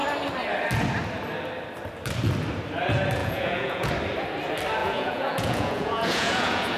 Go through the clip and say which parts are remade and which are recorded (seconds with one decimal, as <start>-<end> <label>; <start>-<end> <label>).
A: 0.0-3.2 recorded; 3.2-3.9 remade; 3.9-4.8 recorded; 4.8-6.8 remade